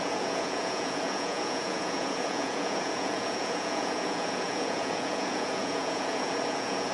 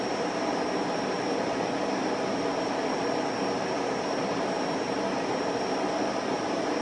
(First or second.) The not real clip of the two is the first